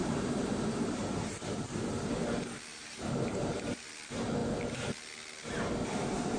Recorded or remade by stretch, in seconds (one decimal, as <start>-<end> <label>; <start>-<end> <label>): 0.0-1.8 remade; 1.8-2.7 recorded; 2.7-3.9 remade; 3.9-6.4 recorded

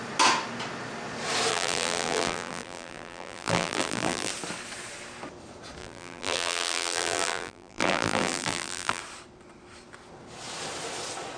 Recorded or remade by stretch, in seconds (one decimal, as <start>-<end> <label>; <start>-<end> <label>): 0.0-1.5 recorded; 1.5-4.3 remade; 4.3-5.8 recorded; 5.8-9.0 remade; 9.0-11.4 recorded